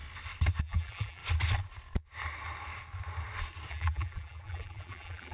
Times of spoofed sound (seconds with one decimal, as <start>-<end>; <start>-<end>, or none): 0.6-1.2; 3.7-5.3